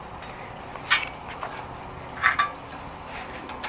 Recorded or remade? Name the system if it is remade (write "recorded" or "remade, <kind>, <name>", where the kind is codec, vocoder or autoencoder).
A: recorded